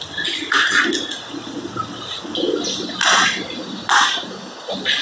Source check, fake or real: real